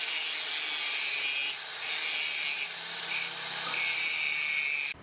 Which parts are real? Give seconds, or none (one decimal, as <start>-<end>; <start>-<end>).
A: 0.0-5.0